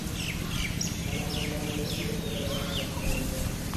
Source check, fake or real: real